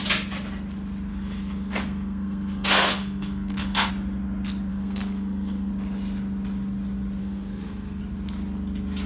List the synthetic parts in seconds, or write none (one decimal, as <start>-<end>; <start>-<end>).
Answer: 1.1-3.9; 4.7-5.7; 7.2-8.0